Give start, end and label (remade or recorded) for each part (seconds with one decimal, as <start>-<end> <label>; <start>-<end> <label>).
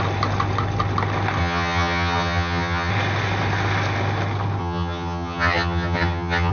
0.0-1.4 recorded; 1.4-2.9 remade; 2.9-4.6 recorded; 4.6-6.5 remade